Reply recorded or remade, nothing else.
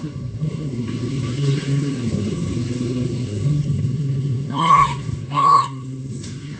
remade